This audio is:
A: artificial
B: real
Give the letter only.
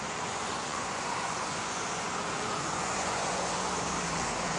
A